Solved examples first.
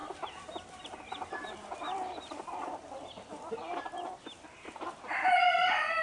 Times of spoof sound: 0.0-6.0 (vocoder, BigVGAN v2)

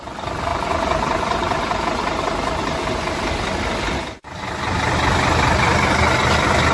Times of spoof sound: 0.5-1.8 (vocoder, BigVGAN v2)

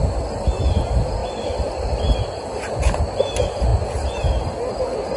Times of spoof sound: 1.2-3.0 (vocoder, BigVGAN v2)